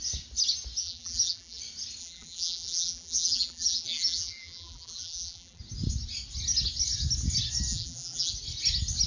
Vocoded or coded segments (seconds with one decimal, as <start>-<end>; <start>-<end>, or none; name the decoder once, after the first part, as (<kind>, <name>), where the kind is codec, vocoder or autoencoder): 0.8-1.6 (vocoder, BigVGAN v2); 2.0-5.6; 7.7-8.3